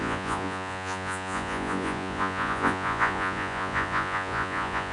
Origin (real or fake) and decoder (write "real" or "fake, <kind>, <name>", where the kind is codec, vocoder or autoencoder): fake, vocoder, Vocos